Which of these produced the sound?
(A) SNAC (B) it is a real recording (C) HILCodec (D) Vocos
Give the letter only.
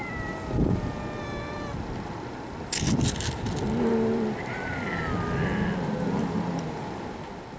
B